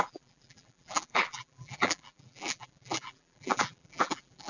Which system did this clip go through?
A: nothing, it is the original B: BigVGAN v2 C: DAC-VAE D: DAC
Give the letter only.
B